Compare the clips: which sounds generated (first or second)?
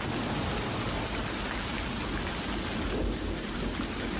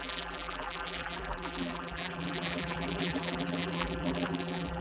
second